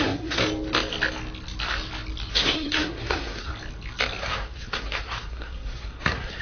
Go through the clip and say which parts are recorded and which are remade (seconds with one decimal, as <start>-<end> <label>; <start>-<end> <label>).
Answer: 0.0-0.4 remade; 0.4-2.3 recorded; 2.3-3.5 remade; 3.5-4.2 recorded; 4.2-6.4 remade